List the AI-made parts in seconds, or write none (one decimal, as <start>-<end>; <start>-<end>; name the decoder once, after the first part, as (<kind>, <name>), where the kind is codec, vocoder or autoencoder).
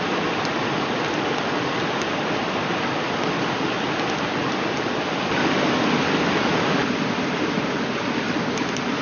none